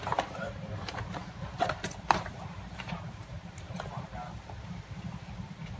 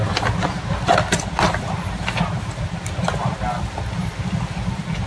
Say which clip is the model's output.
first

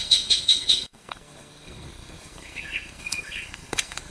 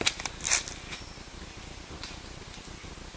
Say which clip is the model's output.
first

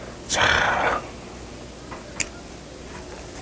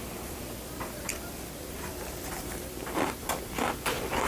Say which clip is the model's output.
second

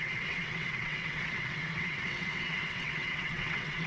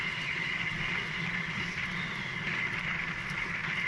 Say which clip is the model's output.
first